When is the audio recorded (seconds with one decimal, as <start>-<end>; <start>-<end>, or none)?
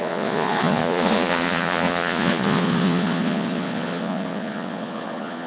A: none